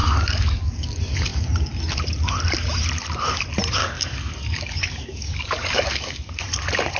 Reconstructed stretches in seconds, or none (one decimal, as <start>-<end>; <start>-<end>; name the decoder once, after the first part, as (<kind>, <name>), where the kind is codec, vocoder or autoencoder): 0.0-0.9 (codec, DAC); 3.8-6.4